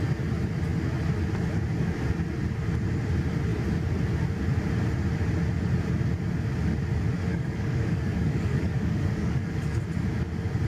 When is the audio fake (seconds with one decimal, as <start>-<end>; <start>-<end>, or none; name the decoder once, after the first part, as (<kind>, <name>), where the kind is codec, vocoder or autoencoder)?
7.3-9.8 (codec, DAC)